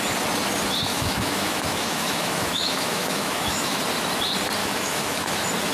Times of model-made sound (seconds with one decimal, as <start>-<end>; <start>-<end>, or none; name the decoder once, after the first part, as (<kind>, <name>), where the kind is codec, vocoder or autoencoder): 0.9-3.8 (autoencoder, DAC-VAE); 4.6-5.3